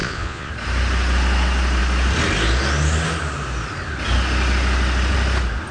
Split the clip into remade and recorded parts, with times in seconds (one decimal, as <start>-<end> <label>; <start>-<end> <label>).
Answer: 0.0-0.5 remade; 0.5-5.7 recorded